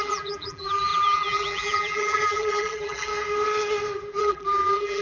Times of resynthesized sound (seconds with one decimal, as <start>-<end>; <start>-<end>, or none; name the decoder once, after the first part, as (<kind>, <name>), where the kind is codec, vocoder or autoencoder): 0.0-3.1 (vocoder, BigVGAN v2); 4.2-5.0

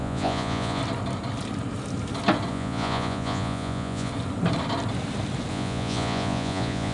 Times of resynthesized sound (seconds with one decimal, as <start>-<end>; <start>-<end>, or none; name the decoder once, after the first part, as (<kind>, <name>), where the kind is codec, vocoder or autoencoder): 0.0-0.8 (vocoder, Vocos); 2.5-4.1; 5.5-6.9